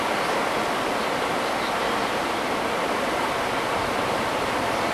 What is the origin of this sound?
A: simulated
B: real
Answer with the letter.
A